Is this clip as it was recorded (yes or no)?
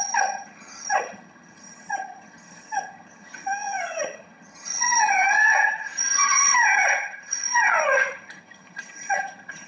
no